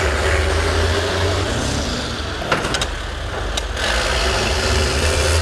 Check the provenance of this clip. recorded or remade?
recorded